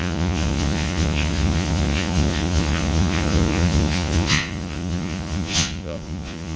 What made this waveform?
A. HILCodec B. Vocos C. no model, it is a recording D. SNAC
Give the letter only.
B